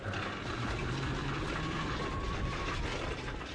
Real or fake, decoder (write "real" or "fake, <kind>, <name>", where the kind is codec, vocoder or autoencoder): real